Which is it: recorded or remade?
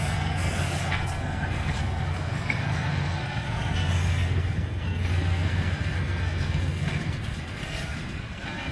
remade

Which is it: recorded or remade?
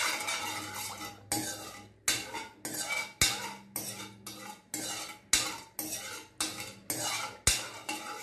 recorded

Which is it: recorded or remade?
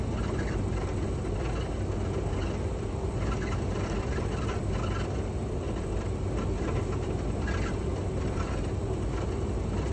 recorded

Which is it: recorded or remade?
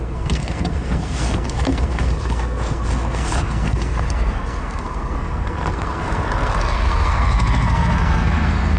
remade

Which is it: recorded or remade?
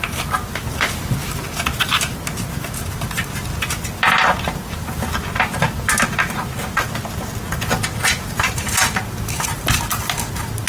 recorded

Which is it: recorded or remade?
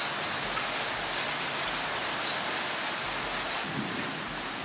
recorded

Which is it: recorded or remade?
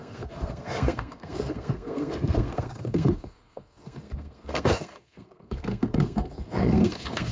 remade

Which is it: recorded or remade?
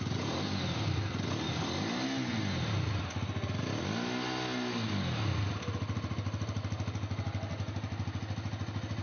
recorded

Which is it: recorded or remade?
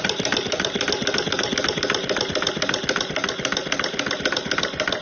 recorded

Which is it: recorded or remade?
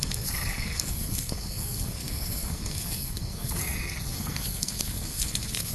remade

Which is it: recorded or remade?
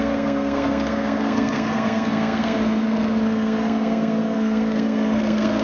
remade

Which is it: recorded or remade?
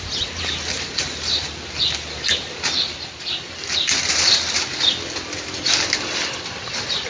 recorded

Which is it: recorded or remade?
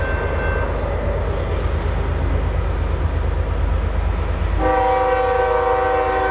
recorded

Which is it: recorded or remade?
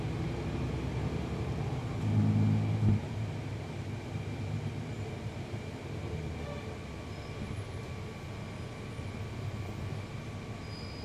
recorded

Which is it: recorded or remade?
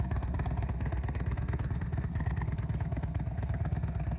remade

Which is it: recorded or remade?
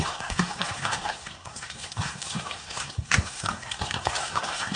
remade